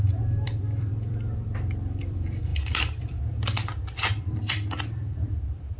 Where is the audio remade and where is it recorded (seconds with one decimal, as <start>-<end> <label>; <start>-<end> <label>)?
0.0-3.7 remade; 3.7-4.2 recorded; 4.2-5.8 remade